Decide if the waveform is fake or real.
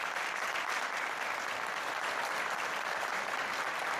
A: real